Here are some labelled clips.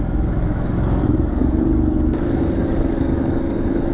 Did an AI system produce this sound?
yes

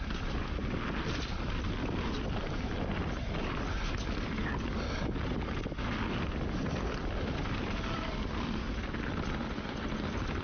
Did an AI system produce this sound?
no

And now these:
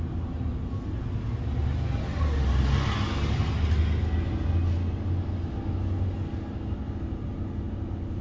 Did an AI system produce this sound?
no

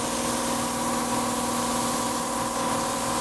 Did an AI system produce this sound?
no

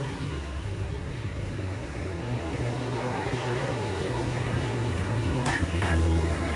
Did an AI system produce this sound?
yes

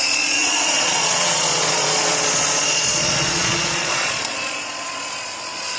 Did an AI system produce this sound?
yes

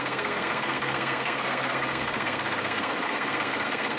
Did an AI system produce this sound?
yes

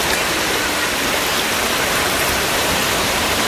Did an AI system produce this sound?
no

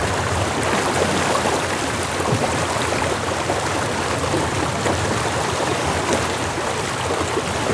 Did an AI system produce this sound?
yes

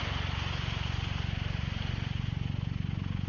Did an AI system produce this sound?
no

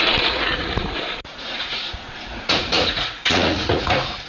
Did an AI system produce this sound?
yes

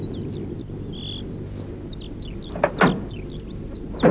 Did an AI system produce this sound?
no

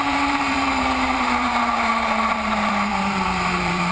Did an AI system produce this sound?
yes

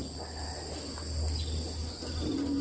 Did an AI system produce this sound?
no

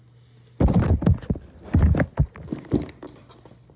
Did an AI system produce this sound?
no